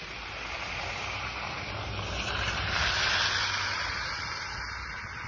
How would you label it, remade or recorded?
recorded